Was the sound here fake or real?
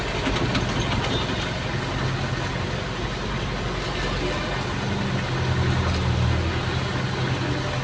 real